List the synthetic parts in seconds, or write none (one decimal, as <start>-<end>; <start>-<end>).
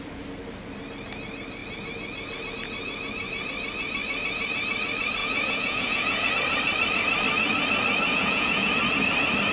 5.2-6.3; 8.1-8.7